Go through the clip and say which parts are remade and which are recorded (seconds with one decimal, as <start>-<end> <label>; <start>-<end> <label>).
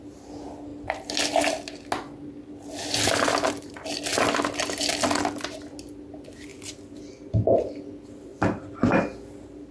0.0-0.7 recorded; 0.7-1.3 remade; 1.3-8.3 recorded; 8.3-9.0 remade; 9.0-9.7 recorded